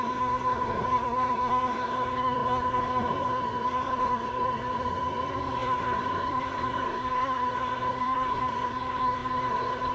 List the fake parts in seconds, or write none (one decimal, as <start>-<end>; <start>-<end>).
0.0-9.9